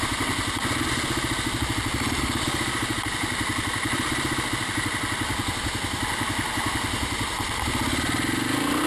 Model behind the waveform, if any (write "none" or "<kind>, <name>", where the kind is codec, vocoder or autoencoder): none